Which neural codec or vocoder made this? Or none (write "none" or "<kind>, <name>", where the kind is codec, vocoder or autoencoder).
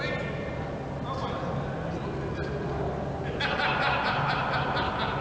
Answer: none